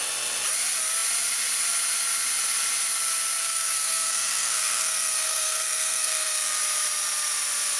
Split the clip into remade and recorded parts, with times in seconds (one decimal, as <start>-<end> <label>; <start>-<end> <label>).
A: 0.0-3.4 recorded; 3.4-6.6 remade; 6.6-7.8 recorded